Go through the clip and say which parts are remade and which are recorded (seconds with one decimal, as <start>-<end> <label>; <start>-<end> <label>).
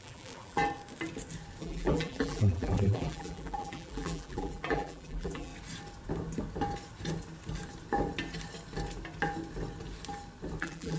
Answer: 0.0-0.6 remade; 0.6-1.6 recorded; 1.6-5.5 remade; 5.5-10.6 recorded; 10.6-11.0 remade